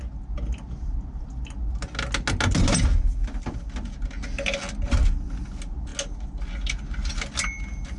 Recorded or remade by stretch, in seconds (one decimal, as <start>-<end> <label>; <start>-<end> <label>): 0.0-8.0 recorded